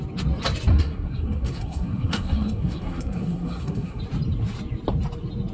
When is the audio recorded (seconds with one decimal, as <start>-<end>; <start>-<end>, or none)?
0.0-0.7; 4.0-5.5